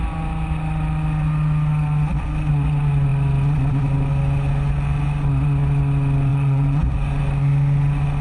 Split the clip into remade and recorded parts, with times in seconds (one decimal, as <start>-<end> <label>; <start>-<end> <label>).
0.0-6.3 recorded; 6.3-7.2 remade; 7.2-8.2 recorded